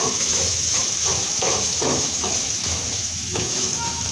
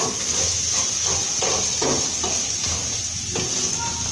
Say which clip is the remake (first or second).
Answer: first